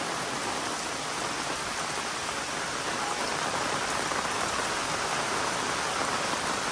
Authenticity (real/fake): real